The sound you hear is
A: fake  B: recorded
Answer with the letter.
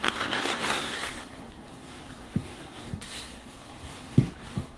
A